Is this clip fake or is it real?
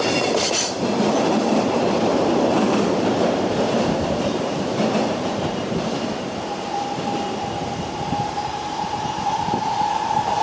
fake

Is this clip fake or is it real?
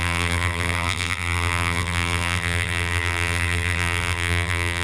fake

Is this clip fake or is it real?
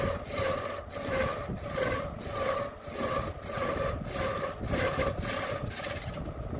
real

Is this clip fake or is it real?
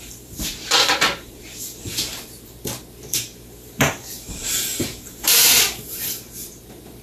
fake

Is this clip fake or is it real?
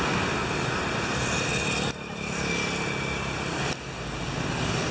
real